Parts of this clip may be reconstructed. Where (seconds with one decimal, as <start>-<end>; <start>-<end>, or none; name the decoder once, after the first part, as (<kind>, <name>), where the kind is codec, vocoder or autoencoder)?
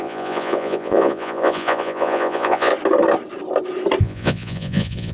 0.0-2.7 (vocoder, Vocos); 4.0-5.1